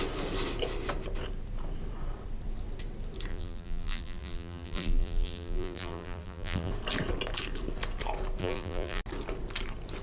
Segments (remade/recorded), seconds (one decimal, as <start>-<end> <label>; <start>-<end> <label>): 0.0-3.3 recorded; 3.3-6.7 remade; 6.7-8.4 recorded; 8.4-9.0 remade; 9.0-10.0 recorded